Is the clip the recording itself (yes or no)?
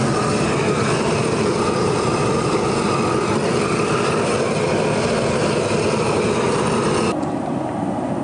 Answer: yes